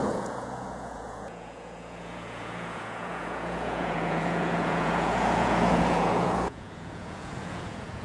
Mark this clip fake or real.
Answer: fake